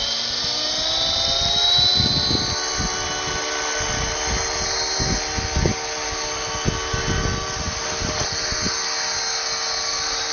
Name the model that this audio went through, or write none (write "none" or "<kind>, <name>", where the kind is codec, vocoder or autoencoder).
none